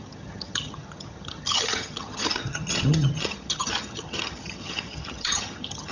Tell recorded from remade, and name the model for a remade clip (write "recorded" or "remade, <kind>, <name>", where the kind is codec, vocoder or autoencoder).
remade, vocoder, HiFi-GAN